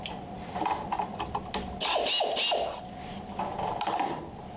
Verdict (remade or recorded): recorded